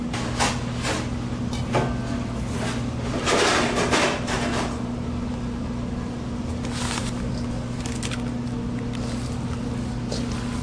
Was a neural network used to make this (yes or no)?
no